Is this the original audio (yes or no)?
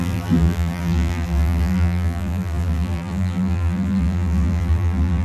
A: no